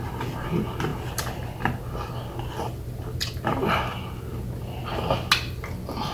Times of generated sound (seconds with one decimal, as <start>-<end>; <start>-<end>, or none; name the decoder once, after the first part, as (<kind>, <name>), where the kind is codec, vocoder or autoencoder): none